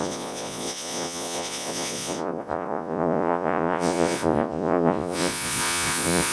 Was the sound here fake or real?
fake